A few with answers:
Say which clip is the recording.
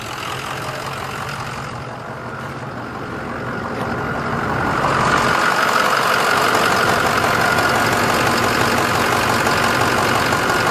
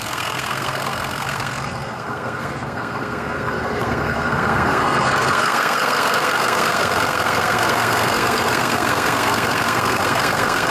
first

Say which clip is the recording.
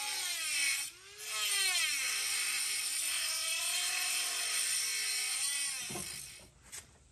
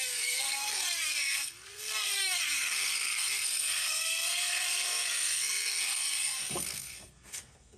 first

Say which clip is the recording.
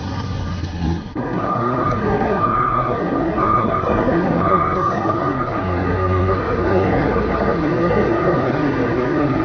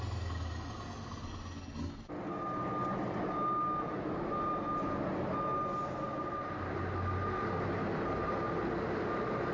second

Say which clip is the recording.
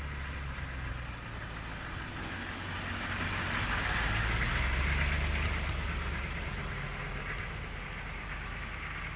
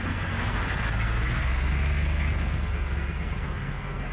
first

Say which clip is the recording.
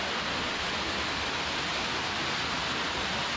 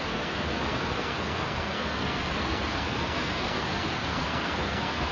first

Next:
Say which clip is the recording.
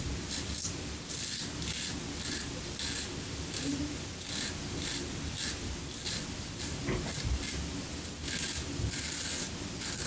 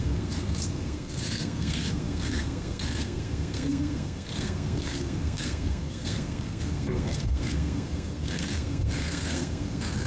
first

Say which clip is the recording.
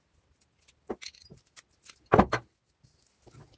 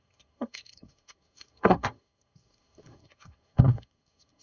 first